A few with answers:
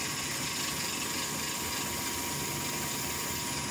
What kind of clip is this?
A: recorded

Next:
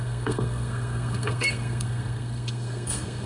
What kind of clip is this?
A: remade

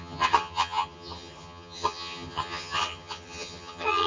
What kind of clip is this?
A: remade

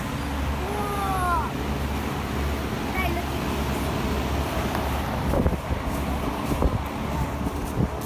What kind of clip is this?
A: recorded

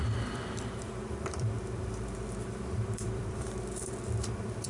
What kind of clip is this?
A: remade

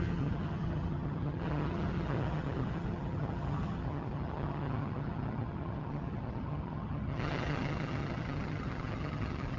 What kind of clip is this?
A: remade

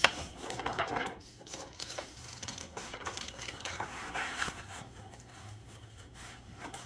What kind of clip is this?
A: remade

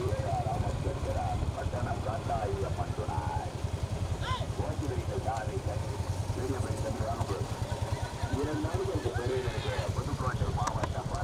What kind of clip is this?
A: remade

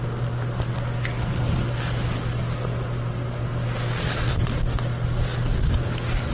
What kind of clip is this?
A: recorded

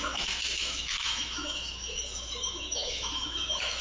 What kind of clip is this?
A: remade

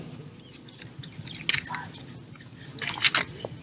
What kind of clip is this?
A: recorded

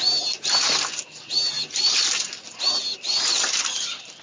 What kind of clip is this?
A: recorded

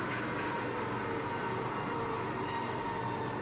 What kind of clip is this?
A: recorded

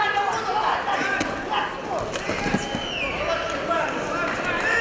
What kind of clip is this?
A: recorded